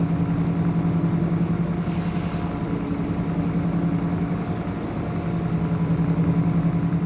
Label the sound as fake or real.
real